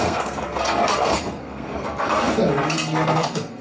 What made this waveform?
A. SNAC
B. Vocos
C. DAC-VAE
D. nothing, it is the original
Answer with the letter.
A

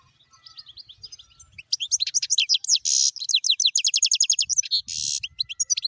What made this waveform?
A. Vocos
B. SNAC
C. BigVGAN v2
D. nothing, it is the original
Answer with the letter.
D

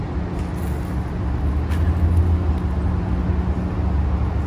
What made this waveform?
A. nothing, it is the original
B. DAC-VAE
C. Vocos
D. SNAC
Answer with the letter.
A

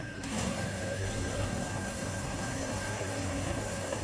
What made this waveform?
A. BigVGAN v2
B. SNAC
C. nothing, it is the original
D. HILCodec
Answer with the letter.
B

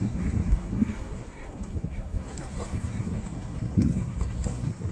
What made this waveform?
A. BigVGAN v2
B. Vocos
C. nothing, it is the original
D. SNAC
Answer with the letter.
D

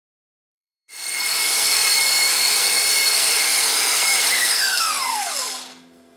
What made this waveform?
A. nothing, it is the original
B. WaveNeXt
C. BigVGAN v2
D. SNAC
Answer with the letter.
D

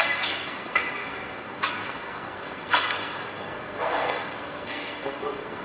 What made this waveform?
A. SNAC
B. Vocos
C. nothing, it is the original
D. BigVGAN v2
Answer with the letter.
A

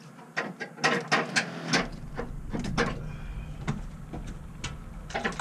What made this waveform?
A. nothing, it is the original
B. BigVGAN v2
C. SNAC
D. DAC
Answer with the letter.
A